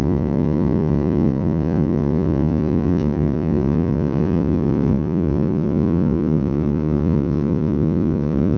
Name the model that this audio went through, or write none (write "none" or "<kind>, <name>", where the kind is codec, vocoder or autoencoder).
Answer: vocoder, Vocos